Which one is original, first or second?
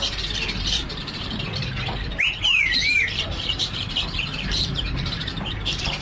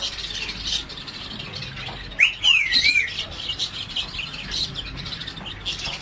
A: second